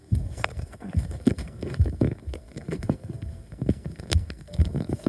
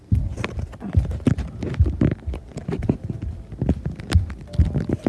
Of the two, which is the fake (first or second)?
first